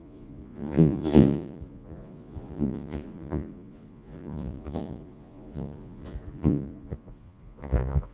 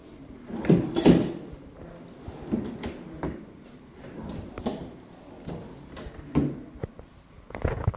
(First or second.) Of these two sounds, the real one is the second